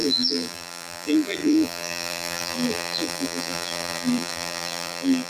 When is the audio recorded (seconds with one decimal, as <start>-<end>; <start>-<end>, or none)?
none